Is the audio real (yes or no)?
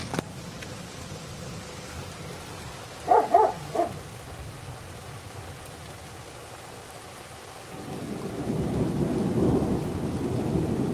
yes